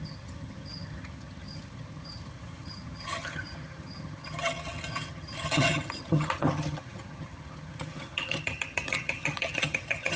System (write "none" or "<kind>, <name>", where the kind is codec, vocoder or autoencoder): vocoder, HiFi-GAN